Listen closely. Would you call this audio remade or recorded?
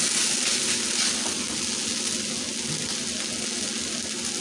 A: recorded